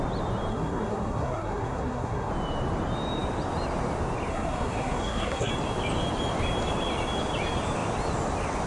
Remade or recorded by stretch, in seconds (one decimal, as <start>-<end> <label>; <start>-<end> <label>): 0.0-0.5 recorded; 0.5-2.3 remade; 2.3-4.3 recorded; 4.3-5.5 remade; 5.5-8.7 recorded